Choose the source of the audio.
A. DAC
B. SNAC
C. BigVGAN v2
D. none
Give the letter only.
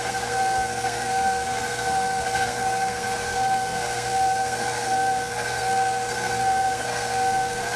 B